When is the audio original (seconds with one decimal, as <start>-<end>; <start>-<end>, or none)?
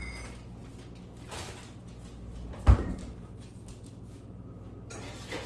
0.0-5.5